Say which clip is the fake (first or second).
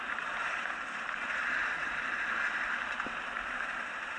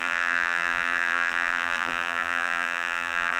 second